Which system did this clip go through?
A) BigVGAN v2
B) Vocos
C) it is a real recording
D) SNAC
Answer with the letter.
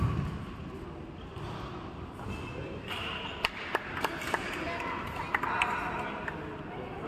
C